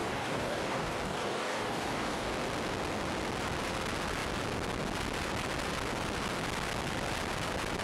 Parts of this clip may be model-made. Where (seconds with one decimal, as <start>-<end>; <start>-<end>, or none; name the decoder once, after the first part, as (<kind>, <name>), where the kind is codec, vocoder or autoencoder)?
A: 0.0-2.3 (codec, DAC)